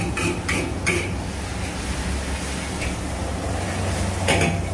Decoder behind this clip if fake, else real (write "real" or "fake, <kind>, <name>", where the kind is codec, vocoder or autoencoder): real